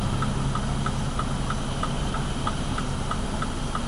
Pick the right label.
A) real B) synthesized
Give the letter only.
A